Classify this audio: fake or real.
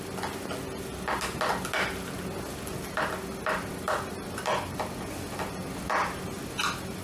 real